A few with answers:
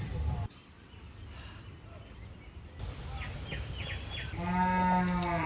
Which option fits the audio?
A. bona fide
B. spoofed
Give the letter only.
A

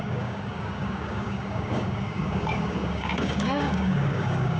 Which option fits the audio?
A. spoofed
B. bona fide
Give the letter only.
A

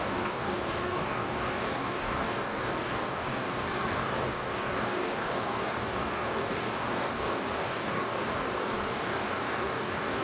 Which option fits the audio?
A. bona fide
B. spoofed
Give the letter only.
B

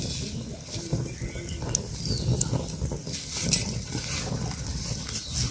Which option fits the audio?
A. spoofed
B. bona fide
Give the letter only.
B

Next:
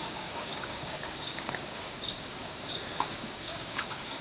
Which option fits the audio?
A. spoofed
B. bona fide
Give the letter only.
A